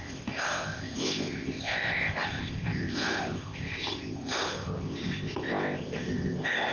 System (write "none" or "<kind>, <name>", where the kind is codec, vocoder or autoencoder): codec, ZipCodec